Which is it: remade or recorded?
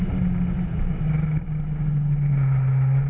recorded